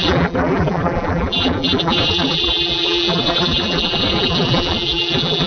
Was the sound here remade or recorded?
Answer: remade